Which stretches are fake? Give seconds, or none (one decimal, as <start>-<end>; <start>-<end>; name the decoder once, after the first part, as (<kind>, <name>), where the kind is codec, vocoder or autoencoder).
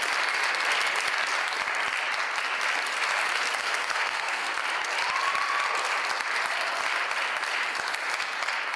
3.6-4.5 (codec, SNAC)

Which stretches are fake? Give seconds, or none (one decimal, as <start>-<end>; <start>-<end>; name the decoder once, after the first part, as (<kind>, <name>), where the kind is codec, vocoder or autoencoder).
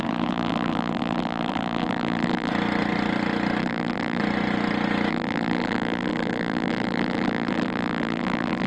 0.0-2.5 (vocoder, BigVGAN v2); 3.6-4.2; 5.1-8.7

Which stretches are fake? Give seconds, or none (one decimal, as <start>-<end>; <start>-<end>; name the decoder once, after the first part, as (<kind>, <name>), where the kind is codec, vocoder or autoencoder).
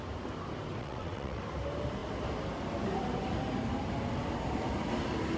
0.8-1.4 (vocoder, WaveNeXt)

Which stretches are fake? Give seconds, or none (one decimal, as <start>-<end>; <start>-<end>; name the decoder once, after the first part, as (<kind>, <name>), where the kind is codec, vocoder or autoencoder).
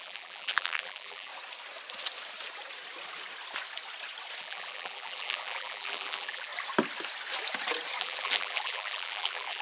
0.0-1.3 (vocoder, BigVGAN v2); 4.4-6.5; 8.0-9.6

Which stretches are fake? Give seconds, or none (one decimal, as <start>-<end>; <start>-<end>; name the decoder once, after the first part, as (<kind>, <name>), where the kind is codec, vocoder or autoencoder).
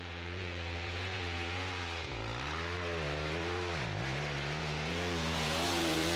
0.0-2.3 (vocoder, Vocos); 4.6-6.2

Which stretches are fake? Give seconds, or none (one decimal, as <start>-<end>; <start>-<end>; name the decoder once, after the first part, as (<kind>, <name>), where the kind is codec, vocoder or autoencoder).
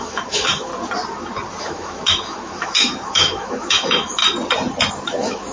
0.0-0.7 (autoencoder, DAC-VAE); 1.6-4.2; 4.9-5.5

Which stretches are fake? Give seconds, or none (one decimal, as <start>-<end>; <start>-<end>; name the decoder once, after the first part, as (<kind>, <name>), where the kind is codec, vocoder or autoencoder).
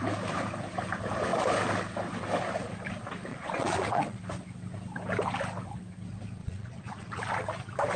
3.3-4.2 (vocoder, Vocos); 6.4-7.2